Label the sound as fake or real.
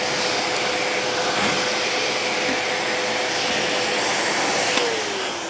real